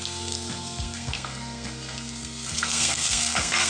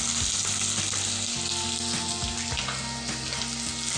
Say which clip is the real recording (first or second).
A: second